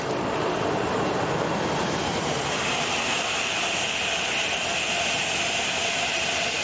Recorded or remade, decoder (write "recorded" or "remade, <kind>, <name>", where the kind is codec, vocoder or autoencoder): recorded